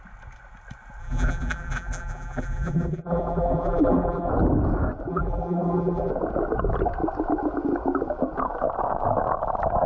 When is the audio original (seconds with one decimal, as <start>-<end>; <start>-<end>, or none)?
0.0-1.0; 4.3-5.1; 6.1-9.9